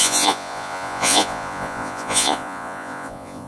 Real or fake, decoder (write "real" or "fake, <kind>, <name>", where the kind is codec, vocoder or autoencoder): fake, vocoder, Vocos